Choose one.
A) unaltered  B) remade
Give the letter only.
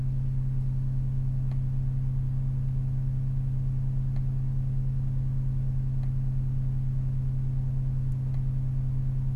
A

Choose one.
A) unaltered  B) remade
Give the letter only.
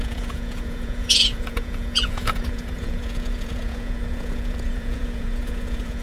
B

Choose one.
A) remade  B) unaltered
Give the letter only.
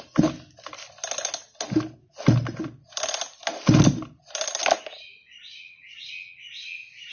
B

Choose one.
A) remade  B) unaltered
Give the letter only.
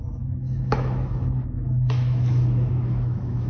A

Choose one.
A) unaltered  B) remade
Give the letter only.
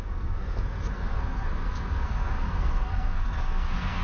B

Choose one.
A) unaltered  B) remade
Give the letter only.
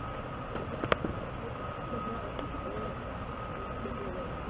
A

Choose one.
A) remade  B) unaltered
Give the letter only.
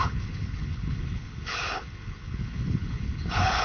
A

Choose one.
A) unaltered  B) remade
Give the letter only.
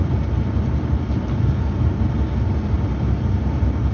A